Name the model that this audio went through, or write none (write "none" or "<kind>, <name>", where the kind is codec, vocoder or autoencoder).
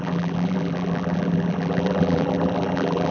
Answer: vocoder, BigVGAN v2